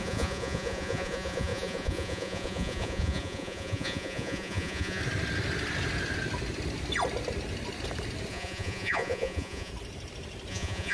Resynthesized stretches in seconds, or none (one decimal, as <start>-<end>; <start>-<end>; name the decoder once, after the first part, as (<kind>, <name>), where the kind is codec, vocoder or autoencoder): 0.0-5.0 (vocoder, Vocos); 8.3-9.7; 10.5-10.9